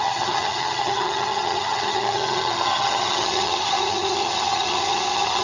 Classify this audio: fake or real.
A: fake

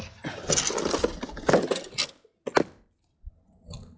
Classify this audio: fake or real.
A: real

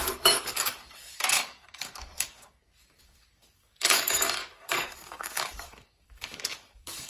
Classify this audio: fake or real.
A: fake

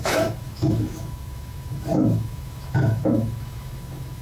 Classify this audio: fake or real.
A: fake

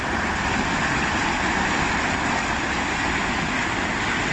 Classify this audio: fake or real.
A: real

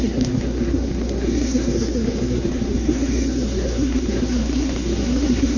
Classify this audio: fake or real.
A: fake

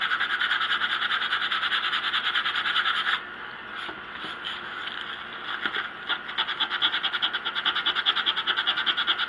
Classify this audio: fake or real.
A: real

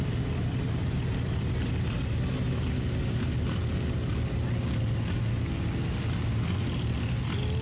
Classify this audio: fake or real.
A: real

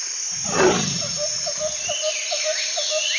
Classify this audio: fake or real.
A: real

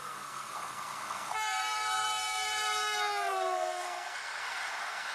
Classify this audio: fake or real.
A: fake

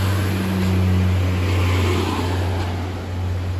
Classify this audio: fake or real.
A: real